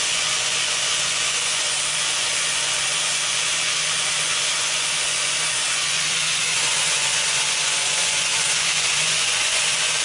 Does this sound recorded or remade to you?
remade